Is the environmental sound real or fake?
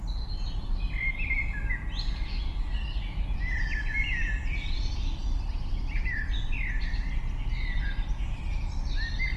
real